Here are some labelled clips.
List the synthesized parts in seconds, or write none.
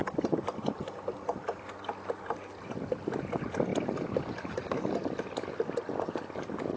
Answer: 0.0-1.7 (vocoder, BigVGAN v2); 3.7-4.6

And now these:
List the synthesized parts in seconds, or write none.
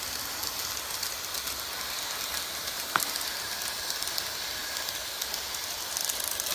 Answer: 2.3-3.0 (vocoder, BigVGAN v2)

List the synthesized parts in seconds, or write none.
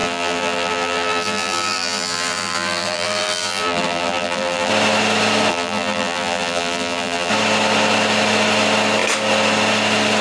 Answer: 0.0-4.7 (vocoder, BigVGAN v2); 5.5-7.3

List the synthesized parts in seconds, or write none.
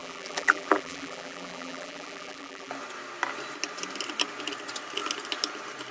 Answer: 0.0-2.7 (vocoder, BigVGAN v2)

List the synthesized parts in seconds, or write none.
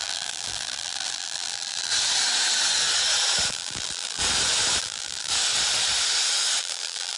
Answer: 0.0-1.9 (vocoder, BigVGAN v2); 3.5-4.2; 4.8-5.3; 6.6-7.2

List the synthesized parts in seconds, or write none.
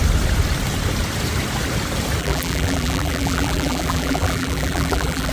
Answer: 2.2-5.3 (vocoder, BigVGAN v2)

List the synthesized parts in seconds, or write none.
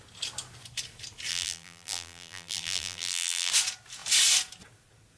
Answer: 1.3-3.5 (vocoder, BigVGAN v2)